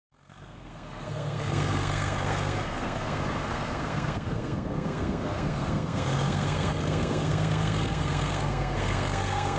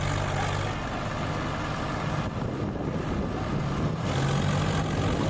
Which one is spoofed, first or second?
first